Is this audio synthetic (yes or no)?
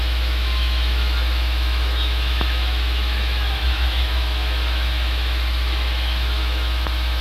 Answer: yes